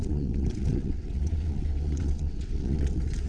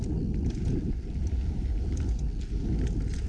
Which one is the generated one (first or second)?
first